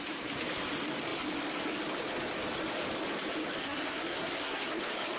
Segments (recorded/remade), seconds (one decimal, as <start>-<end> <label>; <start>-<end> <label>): 0.0-3.6 recorded; 3.6-4.8 remade; 4.8-5.2 recorded